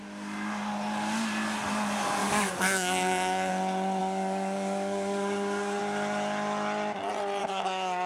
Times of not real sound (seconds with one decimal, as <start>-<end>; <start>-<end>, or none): 2.2-3.5; 4.0-5.8; 7.4-8.1